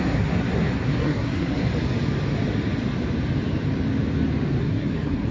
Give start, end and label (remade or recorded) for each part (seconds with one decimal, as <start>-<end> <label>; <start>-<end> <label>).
0.0-1.7 remade; 1.7-4.6 recorded; 4.6-5.3 remade